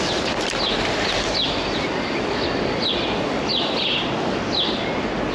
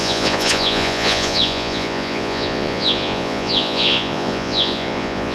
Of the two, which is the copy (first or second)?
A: second